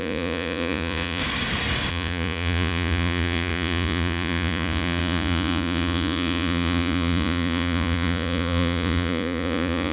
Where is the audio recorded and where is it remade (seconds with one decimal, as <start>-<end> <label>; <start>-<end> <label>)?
0.0-1.2 remade; 1.2-1.9 recorded; 1.9-9.9 remade